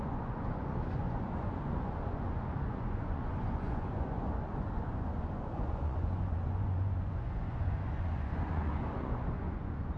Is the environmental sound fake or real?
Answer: fake